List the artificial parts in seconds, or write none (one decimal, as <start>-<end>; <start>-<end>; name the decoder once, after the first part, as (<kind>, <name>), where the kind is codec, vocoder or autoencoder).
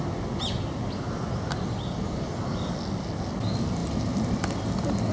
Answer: none